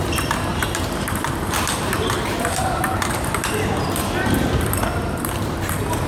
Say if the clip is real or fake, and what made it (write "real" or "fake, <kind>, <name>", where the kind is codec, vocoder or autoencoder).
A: fake, vocoder, BigVGAN v2